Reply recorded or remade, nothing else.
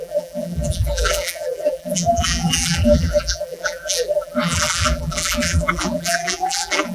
remade